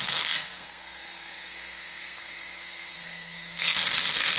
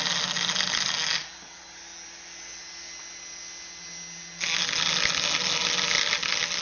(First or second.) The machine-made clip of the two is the first